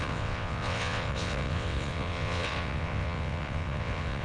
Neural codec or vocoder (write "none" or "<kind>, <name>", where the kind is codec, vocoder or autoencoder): vocoder, WaveNeXt